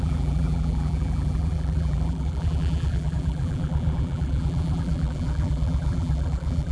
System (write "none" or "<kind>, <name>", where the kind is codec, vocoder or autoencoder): vocoder, BigVGAN v2